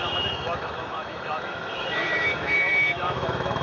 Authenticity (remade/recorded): remade